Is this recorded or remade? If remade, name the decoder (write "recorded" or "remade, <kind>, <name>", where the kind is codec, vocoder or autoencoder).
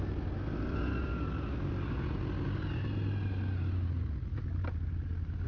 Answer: recorded